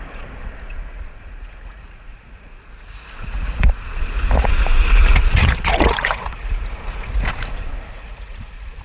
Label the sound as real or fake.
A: fake